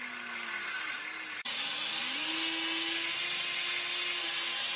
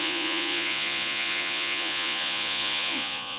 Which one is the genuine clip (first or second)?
first